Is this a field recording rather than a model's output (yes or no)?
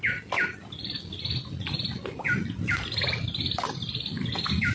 yes